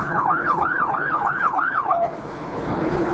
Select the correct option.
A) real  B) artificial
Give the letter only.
B